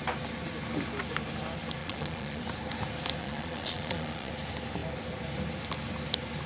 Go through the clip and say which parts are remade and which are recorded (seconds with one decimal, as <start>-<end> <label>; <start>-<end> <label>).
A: 0.0-1.8 recorded; 1.8-2.4 remade; 2.4-3.2 recorded; 3.2-4.3 remade; 4.3-6.5 recorded